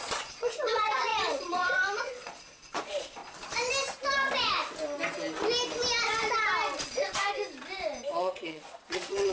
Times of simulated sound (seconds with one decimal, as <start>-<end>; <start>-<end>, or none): 0.0-3.2; 8.2-9.3